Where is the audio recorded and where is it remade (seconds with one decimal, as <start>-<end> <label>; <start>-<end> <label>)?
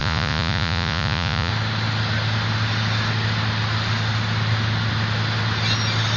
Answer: 0.0-1.5 remade; 1.5-6.2 recorded